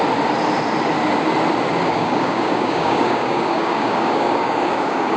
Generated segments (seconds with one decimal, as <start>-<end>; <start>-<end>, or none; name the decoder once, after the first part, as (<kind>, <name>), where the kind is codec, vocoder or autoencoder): 1.8-5.2 (codec, DAC)

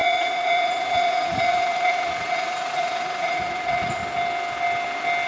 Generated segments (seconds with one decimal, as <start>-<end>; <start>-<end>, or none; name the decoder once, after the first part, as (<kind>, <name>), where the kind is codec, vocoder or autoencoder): 0.0-4.0 (vocoder, Vocos)

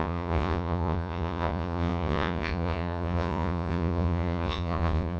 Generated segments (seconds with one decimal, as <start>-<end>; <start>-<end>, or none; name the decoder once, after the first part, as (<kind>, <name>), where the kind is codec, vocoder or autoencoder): 0.0-5.2 (vocoder, Vocos)

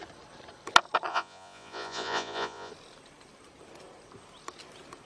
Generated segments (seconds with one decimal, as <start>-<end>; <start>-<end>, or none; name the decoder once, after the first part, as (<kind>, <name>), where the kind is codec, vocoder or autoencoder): 1.1-2.7 (vocoder, Vocos)

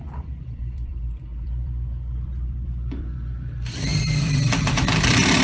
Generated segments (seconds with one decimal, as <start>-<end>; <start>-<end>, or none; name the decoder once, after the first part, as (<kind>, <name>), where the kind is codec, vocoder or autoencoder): 0.0-5.4 (vocoder, BigVGAN v2)

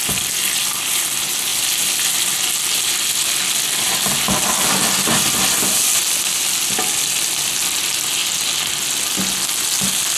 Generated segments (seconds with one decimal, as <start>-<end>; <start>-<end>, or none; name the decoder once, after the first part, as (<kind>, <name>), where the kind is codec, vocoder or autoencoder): none